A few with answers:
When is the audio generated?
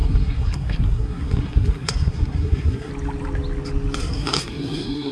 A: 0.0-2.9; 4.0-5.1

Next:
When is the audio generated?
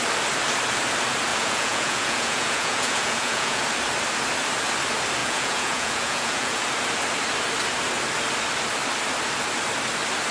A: 1.3-3.6; 5.2-6.6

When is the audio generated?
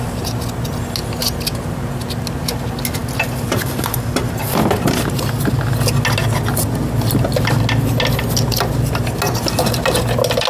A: none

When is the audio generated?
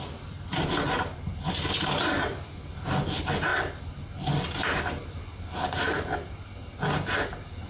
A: none